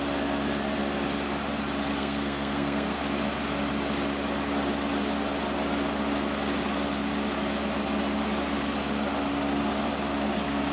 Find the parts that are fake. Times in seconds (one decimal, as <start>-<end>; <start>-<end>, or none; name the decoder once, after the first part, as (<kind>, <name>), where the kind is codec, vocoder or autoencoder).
2.0-3.0 (codec, SNAC)